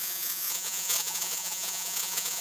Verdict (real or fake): fake